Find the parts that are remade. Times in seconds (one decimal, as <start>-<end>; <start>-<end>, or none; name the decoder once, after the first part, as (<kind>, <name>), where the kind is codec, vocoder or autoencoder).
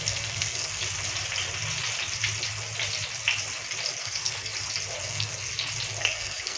0.0-0.8 (codec, SNAC); 4.0-4.5; 5.0-5.5; 6.0-6.6